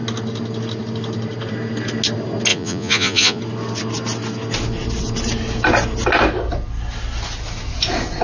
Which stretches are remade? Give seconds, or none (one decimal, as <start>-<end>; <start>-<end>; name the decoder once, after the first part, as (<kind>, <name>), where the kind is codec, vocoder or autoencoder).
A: 2.5-3.4 (vocoder, Vocos)